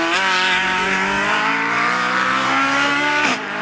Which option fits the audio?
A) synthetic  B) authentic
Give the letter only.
A